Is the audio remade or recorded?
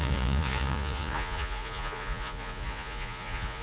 remade